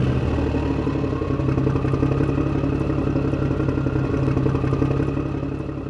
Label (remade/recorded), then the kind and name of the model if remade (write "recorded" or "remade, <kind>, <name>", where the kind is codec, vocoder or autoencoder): recorded